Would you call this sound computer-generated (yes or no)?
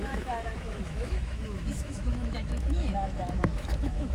yes